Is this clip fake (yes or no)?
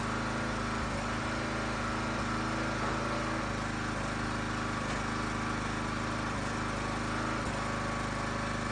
no